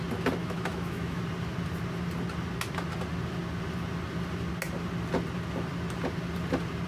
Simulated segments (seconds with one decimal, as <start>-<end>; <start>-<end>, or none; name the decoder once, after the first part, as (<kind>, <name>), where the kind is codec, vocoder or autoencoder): 0.4-1.2 (autoencoder, DAC-VAE)